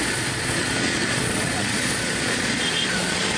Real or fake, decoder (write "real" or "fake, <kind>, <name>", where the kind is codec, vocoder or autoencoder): fake, vocoder, Vocos